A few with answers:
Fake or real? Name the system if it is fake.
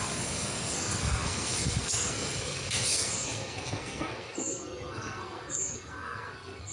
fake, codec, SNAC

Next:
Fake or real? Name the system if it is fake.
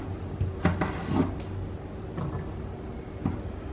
real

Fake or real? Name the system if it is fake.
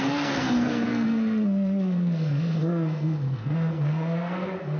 fake, codec, SNAC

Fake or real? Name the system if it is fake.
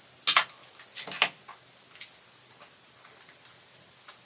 real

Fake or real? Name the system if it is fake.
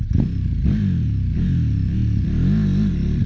real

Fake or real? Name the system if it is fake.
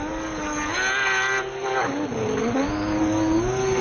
real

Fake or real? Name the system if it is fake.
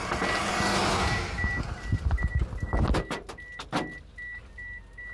real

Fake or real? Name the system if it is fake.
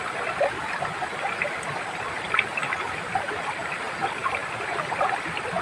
real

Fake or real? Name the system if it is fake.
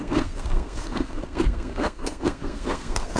fake, codec, SNAC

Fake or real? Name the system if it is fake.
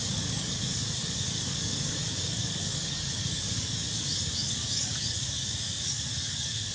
fake, codec, DAC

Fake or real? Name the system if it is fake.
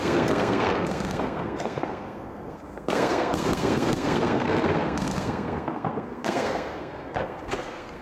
fake, codec, SNAC